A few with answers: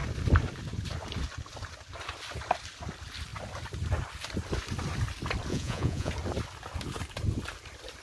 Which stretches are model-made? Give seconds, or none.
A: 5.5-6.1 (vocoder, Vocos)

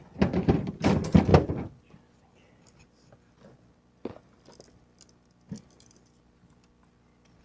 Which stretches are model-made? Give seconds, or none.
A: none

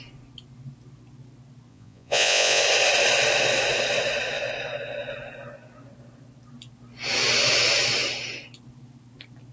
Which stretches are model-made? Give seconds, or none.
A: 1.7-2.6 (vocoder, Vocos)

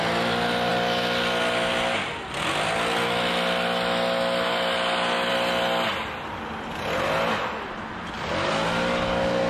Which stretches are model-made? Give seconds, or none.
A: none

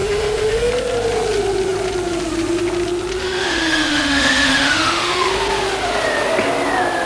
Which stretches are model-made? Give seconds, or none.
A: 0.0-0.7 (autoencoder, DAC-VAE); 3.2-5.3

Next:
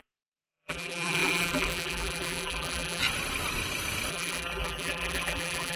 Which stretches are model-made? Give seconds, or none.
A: 0.0-3.0 (vocoder, BigVGAN v2); 4.1-5.8

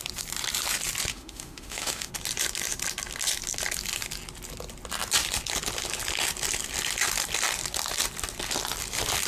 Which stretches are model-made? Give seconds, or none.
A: 1.1-2.1 (autoencoder, DAC-VAE)

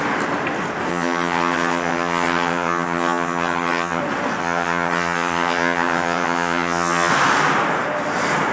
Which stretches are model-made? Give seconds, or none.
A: 0.9-4.0 (vocoder, HiFi-GAN); 4.4-7.1